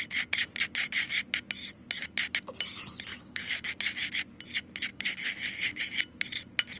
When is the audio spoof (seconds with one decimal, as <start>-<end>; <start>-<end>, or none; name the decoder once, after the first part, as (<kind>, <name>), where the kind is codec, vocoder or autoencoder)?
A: 3.1-3.7 (codec, HILCodec); 4.9-5.8